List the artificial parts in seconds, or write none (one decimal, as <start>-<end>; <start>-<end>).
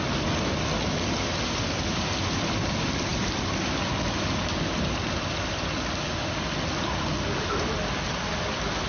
none